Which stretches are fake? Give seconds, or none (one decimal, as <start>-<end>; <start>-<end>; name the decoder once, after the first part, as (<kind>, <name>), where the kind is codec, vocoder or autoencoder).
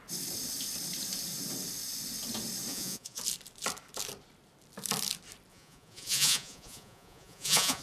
2.7-3.2 (vocoder, Vocos); 5.5-7.8